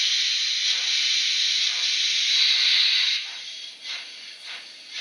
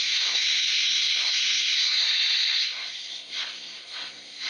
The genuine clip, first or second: first